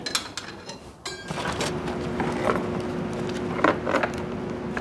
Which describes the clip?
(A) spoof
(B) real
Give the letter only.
B